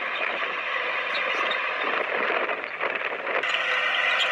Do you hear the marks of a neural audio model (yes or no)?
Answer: no